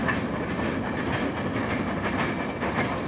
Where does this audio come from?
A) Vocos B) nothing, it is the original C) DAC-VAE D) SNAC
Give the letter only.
B